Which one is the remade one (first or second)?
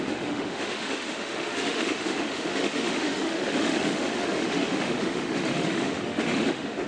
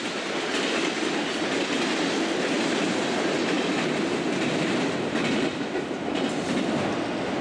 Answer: first